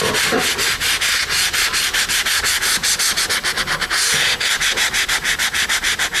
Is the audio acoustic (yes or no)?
yes